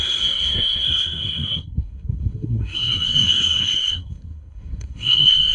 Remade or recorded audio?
remade